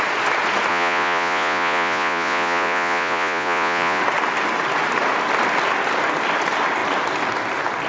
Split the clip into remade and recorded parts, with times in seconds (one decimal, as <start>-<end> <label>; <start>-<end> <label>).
0.0-0.7 recorded; 0.7-4.0 remade; 4.0-7.9 recorded